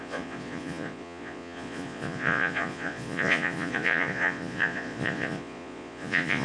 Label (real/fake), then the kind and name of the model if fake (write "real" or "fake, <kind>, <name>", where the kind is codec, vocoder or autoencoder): fake, vocoder, Vocos